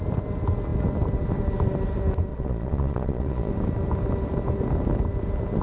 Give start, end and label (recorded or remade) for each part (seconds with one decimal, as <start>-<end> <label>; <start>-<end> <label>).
0.0-2.3 recorded; 2.3-3.5 remade; 3.5-5.6 recorded